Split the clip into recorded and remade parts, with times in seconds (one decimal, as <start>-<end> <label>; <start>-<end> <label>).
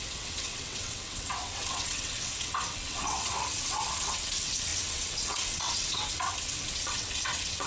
0.0-7.7 remade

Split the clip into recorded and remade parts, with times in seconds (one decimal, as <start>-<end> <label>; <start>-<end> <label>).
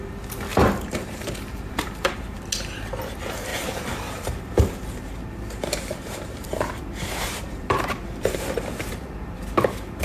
0.0-0.5 recorded; 0.5-2.4 remade; 2.4-3.5 recorded; 3.5-8.5 remade; 8.5-10.0 recorded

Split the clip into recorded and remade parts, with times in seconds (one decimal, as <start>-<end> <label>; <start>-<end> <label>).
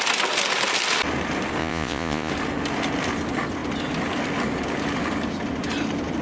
0.0-1.6 recorded; 1.6-2.3 remade; 2.3-6.2 recorded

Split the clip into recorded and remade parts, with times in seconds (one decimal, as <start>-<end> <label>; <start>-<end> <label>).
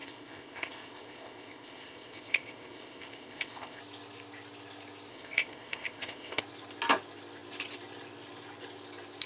0.0-3.8 remade; 3.8-5.1 recorded; 5.1-6.4 remade; 6.4-9.3 recorded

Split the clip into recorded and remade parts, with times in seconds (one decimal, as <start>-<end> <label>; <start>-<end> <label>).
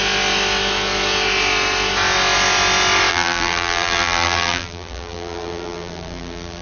0.0-3.1 recorded; 3.1-6.6 remade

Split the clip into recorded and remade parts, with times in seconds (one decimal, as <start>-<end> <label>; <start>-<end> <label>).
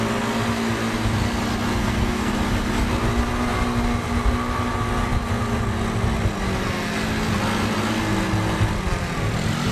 0.0-1.8 recorded; 1.8-2.3 remade; 2.3-9.7 recorded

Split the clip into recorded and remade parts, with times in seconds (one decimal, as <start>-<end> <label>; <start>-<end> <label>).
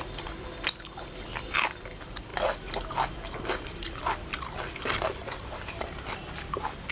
0.0-6.9 recorded